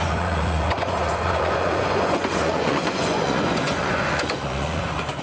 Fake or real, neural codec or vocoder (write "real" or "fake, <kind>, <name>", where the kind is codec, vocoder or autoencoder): fake, vocoder, Vocos